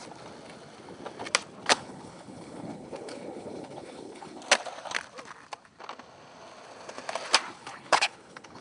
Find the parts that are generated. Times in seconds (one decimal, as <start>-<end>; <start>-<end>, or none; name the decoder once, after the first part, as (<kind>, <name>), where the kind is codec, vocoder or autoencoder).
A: 1.7-4.4 (codec, HILCodec); 7.6-8.6